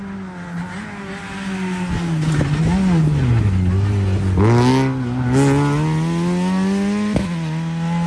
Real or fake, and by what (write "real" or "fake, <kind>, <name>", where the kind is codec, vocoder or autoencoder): real